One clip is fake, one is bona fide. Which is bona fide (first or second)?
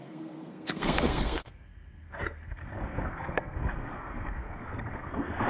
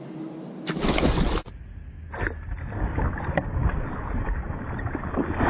second